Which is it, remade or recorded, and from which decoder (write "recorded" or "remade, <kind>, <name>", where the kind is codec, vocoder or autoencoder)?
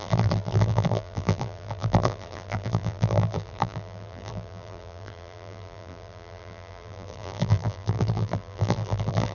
remade, vocoder, BigVGAN v2